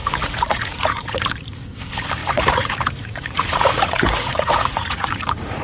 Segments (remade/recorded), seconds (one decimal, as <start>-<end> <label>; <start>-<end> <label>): 0.0-1.3 remade; 1.3-2.2 recorded; 2.2-5.6 remade